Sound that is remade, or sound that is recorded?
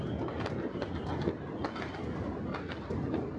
recorded